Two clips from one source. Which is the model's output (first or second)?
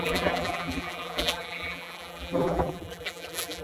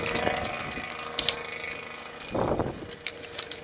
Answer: first